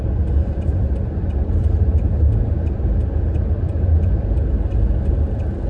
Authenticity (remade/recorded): recorded